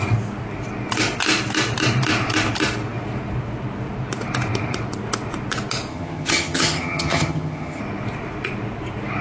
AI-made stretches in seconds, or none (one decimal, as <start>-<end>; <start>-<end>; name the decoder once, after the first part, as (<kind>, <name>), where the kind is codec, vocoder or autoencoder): 5.9-7.8 (vocoder, HiFi-GAN)